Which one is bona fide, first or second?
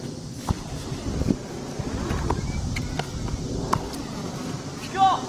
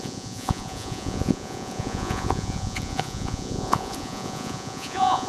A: first